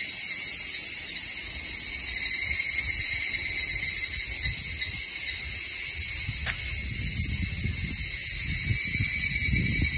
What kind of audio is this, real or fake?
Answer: real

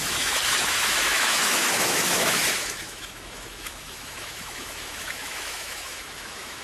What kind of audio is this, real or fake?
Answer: fake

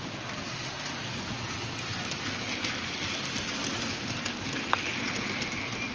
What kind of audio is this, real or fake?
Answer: real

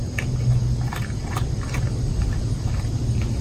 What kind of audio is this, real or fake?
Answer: real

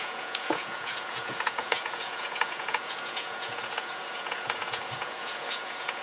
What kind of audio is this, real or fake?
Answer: fake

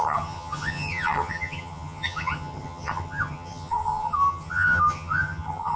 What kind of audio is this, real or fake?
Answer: fake